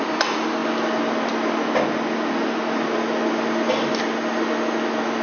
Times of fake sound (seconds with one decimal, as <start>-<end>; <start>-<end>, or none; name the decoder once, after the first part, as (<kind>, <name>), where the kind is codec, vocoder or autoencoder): none

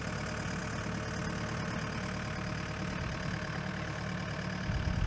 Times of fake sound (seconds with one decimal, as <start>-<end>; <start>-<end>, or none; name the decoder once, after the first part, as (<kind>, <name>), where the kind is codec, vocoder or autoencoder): none

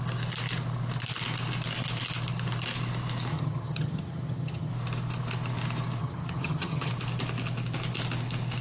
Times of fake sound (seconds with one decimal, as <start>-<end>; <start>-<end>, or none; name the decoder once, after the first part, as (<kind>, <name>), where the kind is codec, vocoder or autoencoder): 3.3-4.7 (vocoder, HiFi-GAN); 6.0-6.9